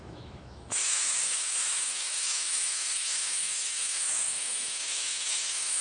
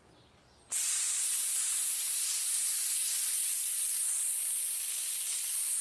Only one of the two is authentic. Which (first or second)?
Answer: second